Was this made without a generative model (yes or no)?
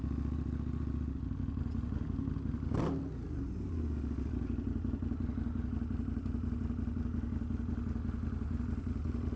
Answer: yes